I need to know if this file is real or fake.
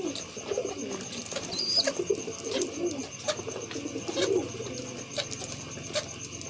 real